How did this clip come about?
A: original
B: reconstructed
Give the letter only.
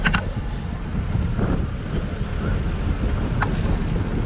A